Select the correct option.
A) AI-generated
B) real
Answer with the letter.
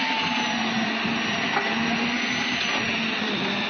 B